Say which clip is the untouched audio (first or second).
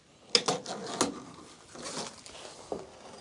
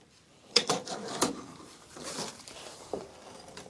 first